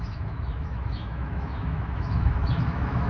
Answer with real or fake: fake